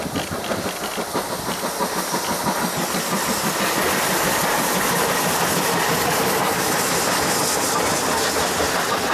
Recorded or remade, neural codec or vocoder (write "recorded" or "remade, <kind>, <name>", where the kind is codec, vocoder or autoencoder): recorded